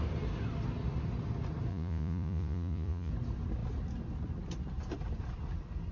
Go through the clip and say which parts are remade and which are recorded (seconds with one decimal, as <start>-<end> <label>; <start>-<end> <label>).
0.0-1.7 recorded; 1.7-3.1 remade; 3.1-5.9 recorded